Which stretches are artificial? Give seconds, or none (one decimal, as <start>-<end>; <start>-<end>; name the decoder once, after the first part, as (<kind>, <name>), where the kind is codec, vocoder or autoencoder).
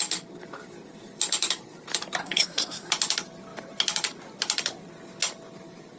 2.2-2.9 (codec, SNAC)